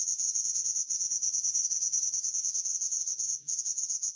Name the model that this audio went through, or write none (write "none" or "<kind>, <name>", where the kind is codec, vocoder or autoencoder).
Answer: vocoder, Vocos